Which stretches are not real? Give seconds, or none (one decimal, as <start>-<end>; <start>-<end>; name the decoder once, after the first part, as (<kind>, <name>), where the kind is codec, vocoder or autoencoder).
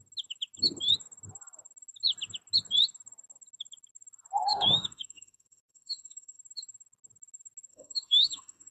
4.5-6.4 (autoencoder, DAC-VAE); 7.7-8.7